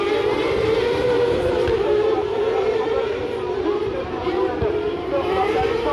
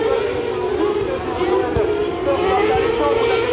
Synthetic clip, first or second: first